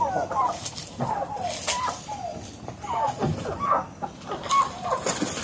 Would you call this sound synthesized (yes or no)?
no